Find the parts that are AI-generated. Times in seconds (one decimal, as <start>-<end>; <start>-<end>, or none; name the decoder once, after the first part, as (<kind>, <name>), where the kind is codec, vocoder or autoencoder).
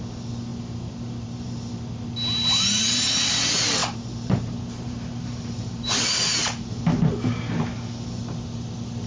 0.5-1.7 (vocoder, BigVGAN v2); 3.8-6.8